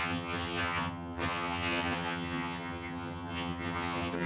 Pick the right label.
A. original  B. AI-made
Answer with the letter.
B